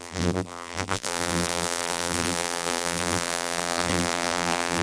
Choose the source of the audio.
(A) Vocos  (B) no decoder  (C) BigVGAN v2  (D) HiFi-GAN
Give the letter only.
C